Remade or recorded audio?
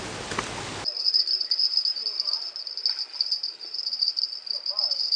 recorded